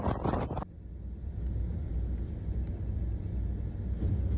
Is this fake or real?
real